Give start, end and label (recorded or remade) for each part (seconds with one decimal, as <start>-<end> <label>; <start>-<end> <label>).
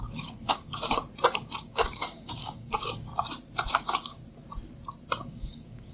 0.0-1.0 remade; 1.0-1.6 recorded; 1.6-3.1 remade; 3.1-3.7 recorded; 3.7-4.2 remade; 4.2-5.2 recorded; 5.2-5.9 remade